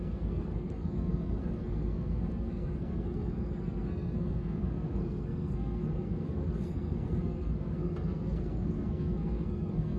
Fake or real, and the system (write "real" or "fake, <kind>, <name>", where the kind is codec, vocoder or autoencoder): fake, codec, SNAC